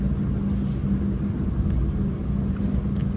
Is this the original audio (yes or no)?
yes